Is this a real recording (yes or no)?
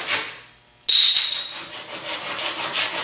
yes